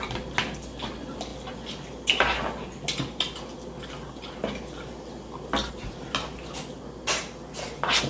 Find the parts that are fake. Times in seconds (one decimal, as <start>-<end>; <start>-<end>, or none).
none